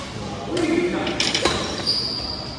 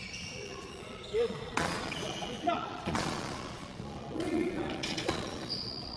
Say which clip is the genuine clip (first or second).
first